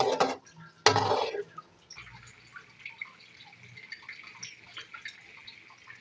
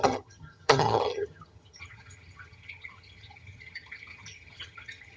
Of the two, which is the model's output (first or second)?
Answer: second